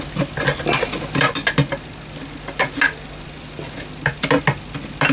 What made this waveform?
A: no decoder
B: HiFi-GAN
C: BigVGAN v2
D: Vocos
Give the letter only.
A